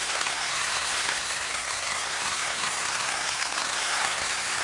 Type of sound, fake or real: fake